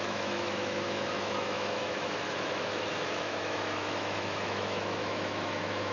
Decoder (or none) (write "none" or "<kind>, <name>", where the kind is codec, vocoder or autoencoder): autoencoder, DAC-VAE